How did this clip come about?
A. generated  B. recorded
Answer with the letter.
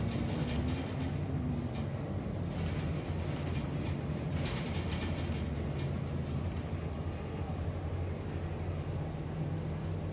B